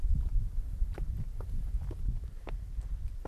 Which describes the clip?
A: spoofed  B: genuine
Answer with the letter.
B